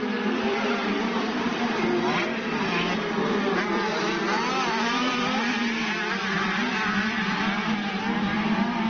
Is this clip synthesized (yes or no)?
yes